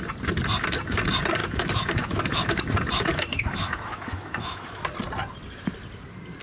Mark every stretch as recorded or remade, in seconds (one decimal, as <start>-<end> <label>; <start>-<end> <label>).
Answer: 0.0-1.4 recorded; 1.4-2.6 remade; 2.6-3.1 recorded; 3.1-4.8 remade; 4.8-6.4 recorded